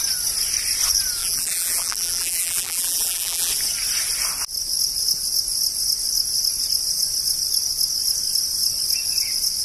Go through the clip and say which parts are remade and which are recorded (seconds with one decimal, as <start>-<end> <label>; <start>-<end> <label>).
0.0-1.2 recorded; 1.2-3.5 remade; 3.5-9.6 recorded